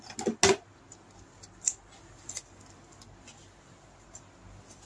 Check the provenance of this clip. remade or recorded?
recorded